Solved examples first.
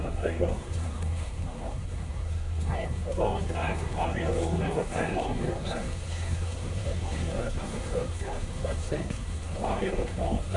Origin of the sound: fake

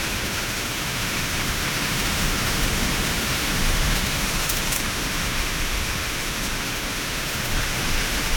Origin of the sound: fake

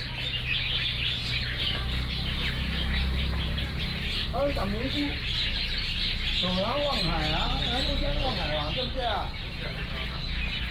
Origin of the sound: real